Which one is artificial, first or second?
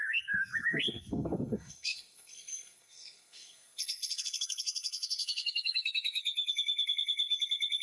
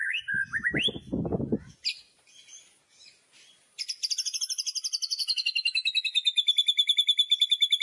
first